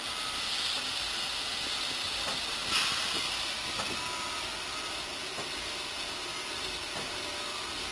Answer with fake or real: real